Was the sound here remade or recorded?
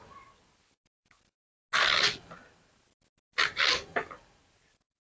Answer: recorded